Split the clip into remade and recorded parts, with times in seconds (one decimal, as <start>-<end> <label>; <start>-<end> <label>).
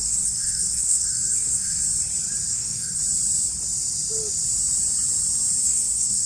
0.0-1.8 remade; 1.8-2.5 recorded; 2.5-3.0 remade; 3.0-5.6 recorded; 5.6-6.3 remade